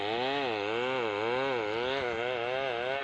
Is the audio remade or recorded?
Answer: recorded